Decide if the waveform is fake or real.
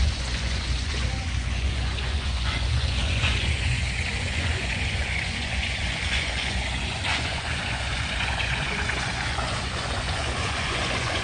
fake